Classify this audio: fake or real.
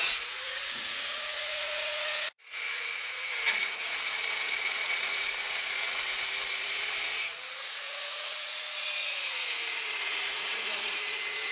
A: fake